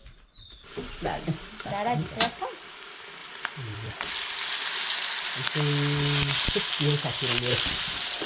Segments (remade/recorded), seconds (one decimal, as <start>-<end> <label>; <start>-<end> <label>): 0.0-3.2 recorded; 3.2-4.1 remade; 4.1-8.3 recorded